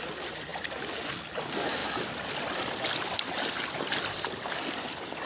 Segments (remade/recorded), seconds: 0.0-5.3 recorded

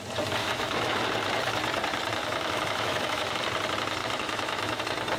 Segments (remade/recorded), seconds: 0.0-0.4 recorded; 0.4-1.0 remade; 1.0-2.2 recorded; 2.2-3.4 remade; 3.4-4.0 recorded; 4.0-4.8 remade; 4.8-5.2 recorded

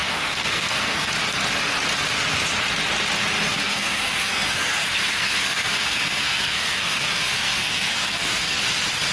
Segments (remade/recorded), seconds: 0.0-1.1 remade; 1.1-3.5 recorded; 3.5-8.6 remade; 8.6-9.1 recorded